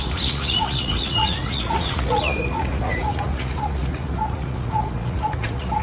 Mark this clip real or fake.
fake